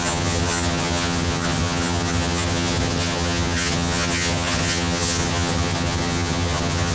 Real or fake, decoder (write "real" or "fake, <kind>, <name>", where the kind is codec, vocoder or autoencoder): fake, vocoder, HiFi-GAN